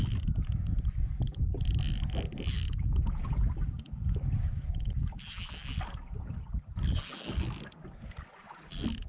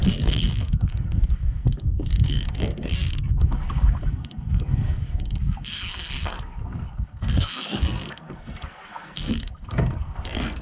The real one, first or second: first